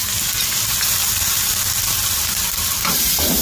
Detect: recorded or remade recorded